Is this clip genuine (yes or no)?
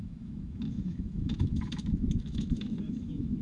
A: no